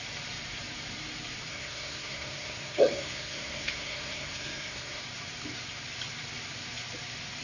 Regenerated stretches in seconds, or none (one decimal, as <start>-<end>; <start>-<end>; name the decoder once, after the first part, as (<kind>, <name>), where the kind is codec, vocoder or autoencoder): 1.5-5.0 (codec, SNAC)